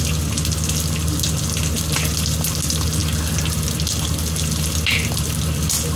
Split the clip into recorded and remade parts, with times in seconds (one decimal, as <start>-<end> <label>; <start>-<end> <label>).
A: 0.0-6.0 recorded

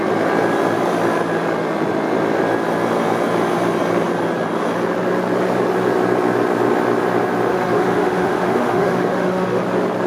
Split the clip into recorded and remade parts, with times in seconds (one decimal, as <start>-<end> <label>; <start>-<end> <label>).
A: 0.0-7.5 recorded; 7.5-9.6 remade; 9.6-10.1 recorded

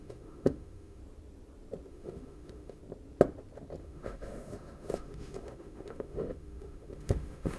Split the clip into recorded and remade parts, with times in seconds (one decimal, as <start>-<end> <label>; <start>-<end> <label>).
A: 0.0-1.0 remade; 1.0-1.9 recorded; 1.9-2.8 remade; 2.8-3.8 recorded; 3.8-7.6 remade

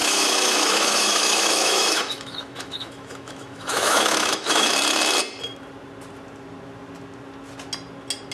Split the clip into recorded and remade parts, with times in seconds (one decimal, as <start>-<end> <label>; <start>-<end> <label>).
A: 0.0-4.7 remade; 4.7-8.3 recorded